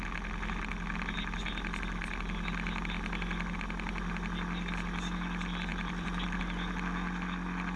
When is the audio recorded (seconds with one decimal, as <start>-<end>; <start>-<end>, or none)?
0.0-5.7; 6.4-7.8

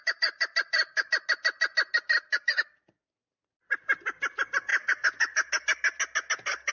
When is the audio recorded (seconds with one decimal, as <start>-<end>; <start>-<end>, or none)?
0.0-6.7

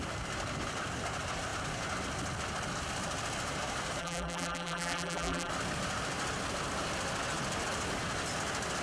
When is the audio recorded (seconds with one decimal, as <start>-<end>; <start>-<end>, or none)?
0.0-4.0; 5.5-8.8

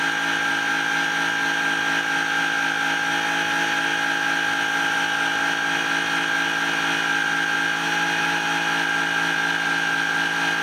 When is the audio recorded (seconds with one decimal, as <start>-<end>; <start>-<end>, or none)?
0.0-10.6

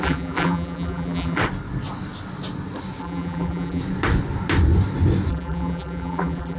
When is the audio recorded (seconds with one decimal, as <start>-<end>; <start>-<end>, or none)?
1.4-3.0; 3.8-5.3